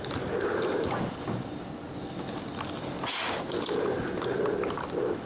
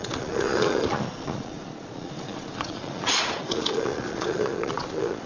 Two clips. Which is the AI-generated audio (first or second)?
second